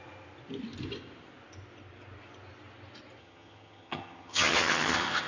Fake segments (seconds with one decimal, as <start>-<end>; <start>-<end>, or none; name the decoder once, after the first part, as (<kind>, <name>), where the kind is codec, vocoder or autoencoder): 3.2-5.3 (vocoder, HiFi-GAN)